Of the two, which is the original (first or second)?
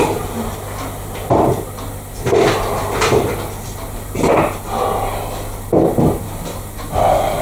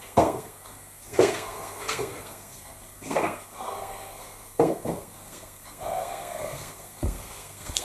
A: first